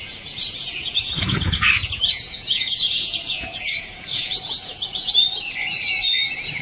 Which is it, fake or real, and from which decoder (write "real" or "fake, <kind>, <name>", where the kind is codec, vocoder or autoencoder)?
fake, vocoder, Vocos